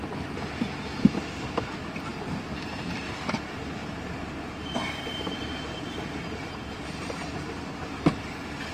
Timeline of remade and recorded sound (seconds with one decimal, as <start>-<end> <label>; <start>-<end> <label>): 0.0-2.1 recorded; 2.1-7.1 remade; 7.1-8.7 recorded